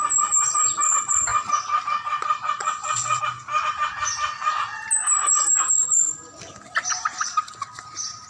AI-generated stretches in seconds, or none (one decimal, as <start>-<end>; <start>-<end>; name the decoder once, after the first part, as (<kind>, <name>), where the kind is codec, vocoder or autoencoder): 2.6-3.2 (vocoder, WaveNeXt)